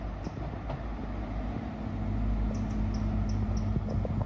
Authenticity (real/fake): real